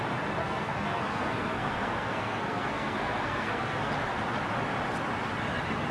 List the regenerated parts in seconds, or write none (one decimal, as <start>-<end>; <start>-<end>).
0.4-3.9